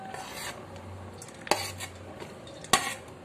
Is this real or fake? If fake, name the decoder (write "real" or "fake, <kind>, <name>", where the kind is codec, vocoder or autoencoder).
real